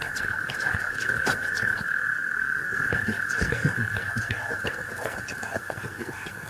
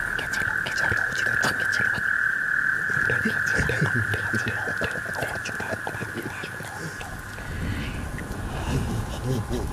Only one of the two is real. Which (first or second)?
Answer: second